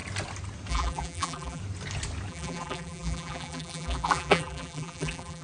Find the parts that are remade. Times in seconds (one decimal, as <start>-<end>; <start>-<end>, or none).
0.7-1.6; 2.3-5.4